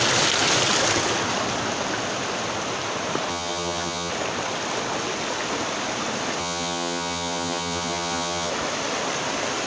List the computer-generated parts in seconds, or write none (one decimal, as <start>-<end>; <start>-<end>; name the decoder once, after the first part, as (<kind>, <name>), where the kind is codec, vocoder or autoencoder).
3.3-4.1 (vocoder, HiFi-GAN); 6.4-8.5